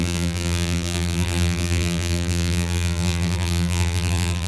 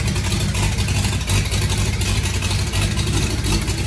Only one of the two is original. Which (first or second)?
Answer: second